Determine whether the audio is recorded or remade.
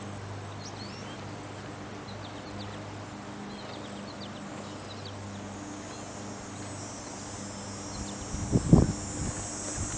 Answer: recorded